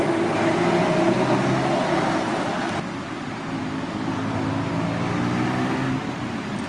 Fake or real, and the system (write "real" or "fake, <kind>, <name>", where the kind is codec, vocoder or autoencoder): real